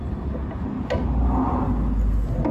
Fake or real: real